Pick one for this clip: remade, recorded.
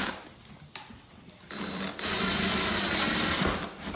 recorded